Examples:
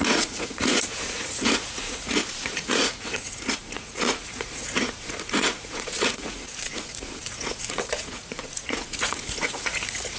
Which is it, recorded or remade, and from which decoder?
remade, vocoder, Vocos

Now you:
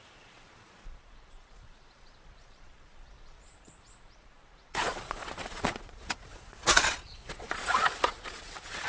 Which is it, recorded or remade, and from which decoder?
remade, vocoder, Vocos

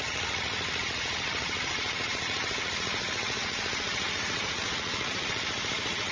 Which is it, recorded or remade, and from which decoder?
remade, vocoder, Vocos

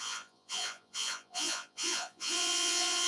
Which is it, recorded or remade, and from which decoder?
remade, vocoder, Vocos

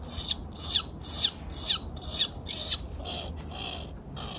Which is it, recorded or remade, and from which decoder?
recorded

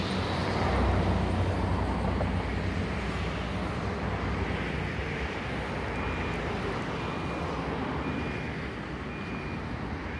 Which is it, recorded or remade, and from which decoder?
recorded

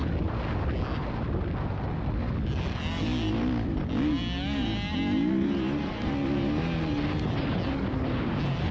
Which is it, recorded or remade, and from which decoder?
recorded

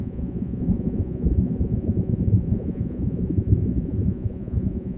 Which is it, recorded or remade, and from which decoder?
remade, vocoder, Vocos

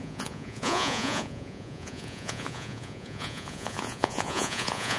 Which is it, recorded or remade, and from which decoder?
remade, vocoder, Vocos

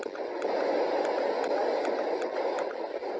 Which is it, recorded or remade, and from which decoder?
recorded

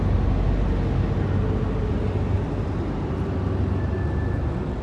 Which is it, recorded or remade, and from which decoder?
recorded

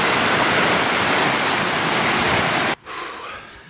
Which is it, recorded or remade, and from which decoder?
recorded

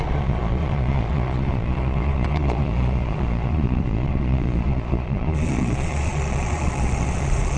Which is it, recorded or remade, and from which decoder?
remade, vocoder, Vocos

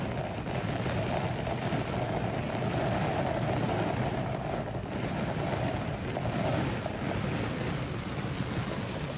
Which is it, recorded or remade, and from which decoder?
recorded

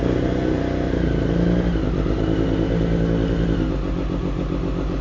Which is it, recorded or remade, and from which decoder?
recorded